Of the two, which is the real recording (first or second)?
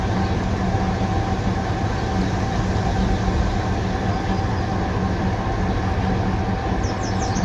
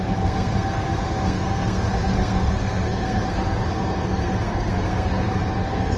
first